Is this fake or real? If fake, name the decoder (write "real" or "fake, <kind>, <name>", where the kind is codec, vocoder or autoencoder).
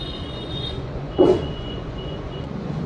fake, vocoder, Vocos